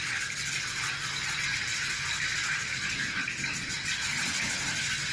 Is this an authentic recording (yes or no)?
yes